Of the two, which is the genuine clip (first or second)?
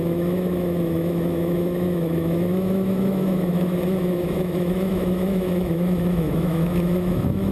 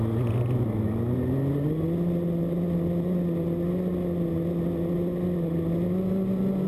second